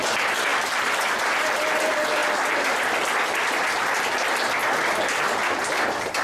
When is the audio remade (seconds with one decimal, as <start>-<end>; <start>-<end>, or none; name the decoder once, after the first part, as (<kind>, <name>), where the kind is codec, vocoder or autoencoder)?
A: 0.5-1.1 (vocoder, BigVGAN v2)